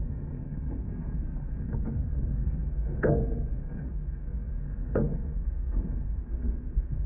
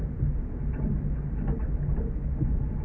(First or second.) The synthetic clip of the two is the first